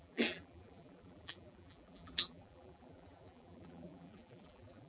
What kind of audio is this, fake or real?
fake